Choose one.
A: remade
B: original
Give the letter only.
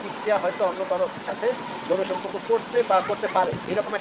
A